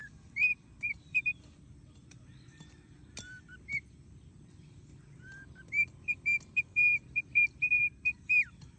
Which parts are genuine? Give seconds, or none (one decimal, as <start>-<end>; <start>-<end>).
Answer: none